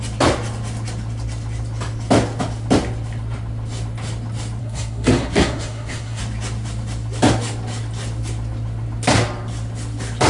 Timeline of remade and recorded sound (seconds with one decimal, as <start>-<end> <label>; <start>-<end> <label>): 0.0-4.6 recorded; 4.6-6.2 remade; 6.2-10.3 recorded